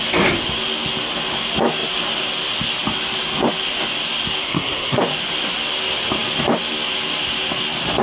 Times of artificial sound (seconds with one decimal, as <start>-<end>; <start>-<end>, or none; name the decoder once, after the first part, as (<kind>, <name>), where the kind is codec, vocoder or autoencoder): 4.4-5.0 (codec, SNAC)